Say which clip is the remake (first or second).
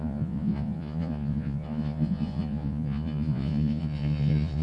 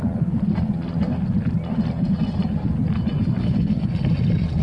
first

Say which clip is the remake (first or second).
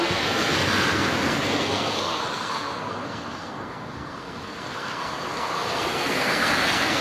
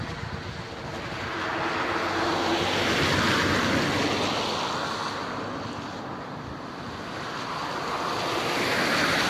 first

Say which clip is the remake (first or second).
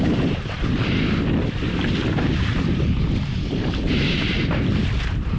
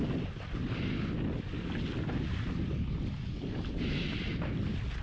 first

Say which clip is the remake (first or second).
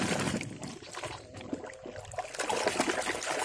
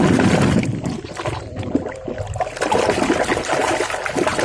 second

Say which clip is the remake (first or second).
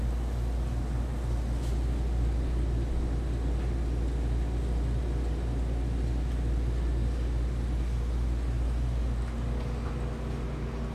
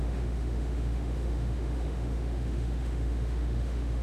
second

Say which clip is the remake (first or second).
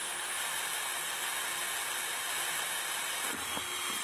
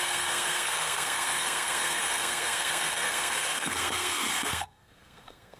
second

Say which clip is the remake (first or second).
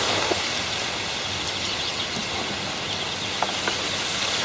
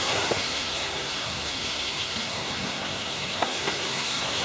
second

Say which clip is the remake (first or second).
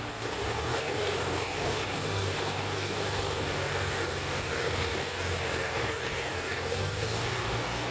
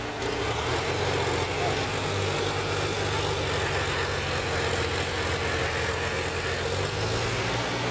first